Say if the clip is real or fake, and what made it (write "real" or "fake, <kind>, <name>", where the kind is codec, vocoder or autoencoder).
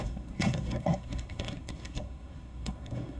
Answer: fake, codec, SNAC